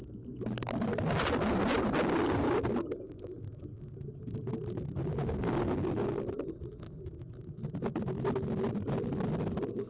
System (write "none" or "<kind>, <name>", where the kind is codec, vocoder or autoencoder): none